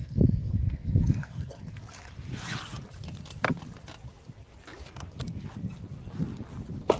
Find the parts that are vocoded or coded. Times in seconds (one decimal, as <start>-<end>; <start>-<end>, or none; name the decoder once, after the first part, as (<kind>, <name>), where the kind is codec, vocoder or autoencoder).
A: 0.0-1.8 (codec, SNAC)